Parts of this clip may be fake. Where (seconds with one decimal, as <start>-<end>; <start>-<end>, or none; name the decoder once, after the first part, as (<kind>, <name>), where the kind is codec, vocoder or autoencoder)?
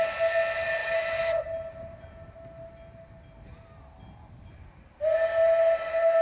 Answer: none